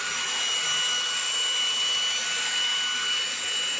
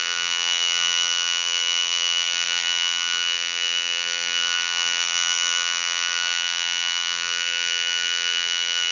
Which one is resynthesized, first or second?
second